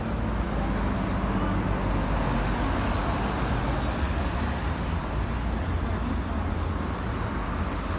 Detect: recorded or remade recorded